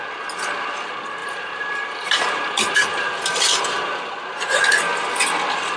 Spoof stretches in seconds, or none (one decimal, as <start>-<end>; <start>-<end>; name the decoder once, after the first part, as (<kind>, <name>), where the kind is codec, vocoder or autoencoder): 1.2-4.6 (vocoder, BigVGAN v2)